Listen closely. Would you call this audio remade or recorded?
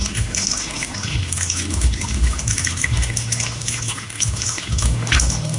remade